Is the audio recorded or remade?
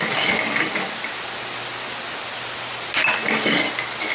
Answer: recorded